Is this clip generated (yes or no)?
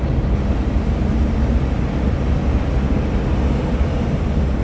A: no